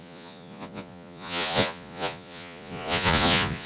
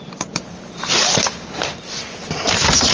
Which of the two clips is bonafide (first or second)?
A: second